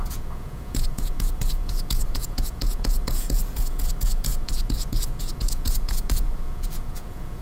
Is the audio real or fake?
fake